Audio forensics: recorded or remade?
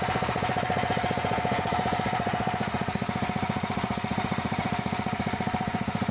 remade